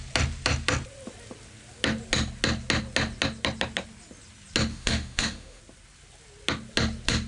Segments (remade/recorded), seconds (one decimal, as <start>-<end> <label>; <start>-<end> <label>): 0.0-4.7 recorded; 4.7-5.6 remade; 5.6-7.3 recorded